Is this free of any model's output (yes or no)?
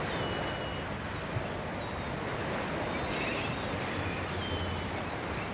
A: yes